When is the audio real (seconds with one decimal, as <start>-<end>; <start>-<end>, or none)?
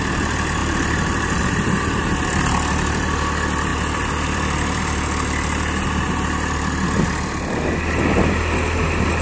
0.0-0.6; 2.4-3.7; 4.8-9.2